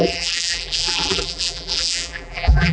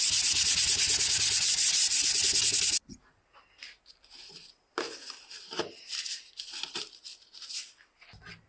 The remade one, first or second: first